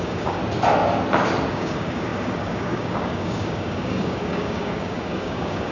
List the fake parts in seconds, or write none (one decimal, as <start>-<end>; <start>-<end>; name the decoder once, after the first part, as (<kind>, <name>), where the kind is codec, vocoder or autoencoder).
0.0-0.4 (codec, DAC); 1.5-5.7